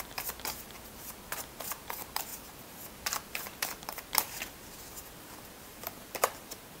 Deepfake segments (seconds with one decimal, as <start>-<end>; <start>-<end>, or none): 0.0-6.8